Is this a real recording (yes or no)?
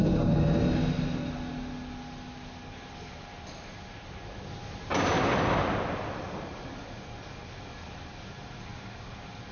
yes